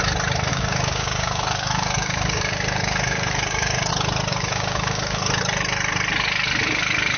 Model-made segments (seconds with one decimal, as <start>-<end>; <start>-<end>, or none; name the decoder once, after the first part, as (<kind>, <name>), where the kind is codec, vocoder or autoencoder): 0.5-3.9 (codec, DAC); 4.3-5.4